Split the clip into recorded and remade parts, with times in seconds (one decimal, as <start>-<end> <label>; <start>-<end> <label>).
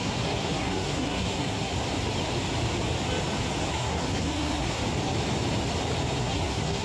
0.0-1.7 remade; 1.7-3.7 recorded; 3.7-4.8 remade; 4.8-6.2 recorded; 6.2-6.8 remade